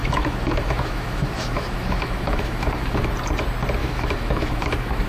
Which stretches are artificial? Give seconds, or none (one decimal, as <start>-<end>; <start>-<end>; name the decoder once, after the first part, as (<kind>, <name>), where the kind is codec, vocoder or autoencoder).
0.0-3.1 (autoencoder, DAC-VAE); 3.8-5.1

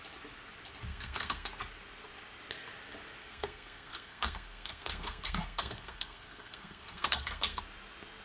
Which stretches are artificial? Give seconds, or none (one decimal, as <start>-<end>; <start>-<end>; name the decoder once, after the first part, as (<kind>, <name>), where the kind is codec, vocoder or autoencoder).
0.9-1.5 (codec, SNAC); 3.2-7.6

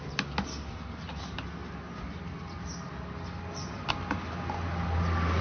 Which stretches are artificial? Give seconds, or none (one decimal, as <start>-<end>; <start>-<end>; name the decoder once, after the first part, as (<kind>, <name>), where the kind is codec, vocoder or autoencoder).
none

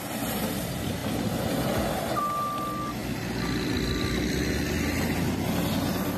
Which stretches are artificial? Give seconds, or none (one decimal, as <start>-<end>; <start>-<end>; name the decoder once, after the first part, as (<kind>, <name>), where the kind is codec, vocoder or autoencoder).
none

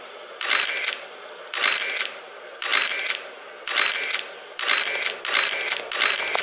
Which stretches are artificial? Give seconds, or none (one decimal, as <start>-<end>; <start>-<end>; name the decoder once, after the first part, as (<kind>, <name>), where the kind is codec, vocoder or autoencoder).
none